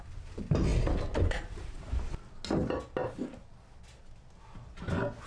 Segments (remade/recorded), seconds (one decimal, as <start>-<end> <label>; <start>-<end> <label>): 0.0-5.3 recorded